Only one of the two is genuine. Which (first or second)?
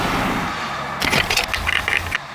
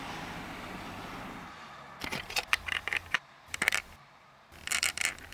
first